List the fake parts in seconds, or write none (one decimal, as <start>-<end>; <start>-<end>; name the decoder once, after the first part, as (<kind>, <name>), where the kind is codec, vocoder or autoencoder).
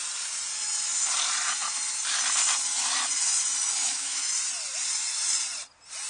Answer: 3.8-4.3 (autoencoder, DAC-VAE)